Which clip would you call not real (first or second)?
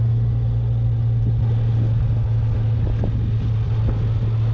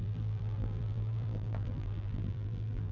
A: second